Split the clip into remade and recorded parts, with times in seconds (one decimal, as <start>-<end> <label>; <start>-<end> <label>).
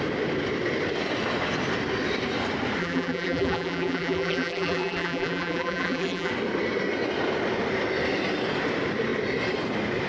0.0-2.8 recorded; 2.8-6.3 remade; 6.3-10.1 recorded